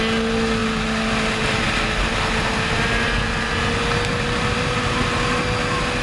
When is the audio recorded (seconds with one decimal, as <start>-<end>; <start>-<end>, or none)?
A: 0.0-6.0